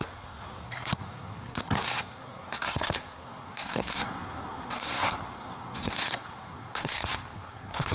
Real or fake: fake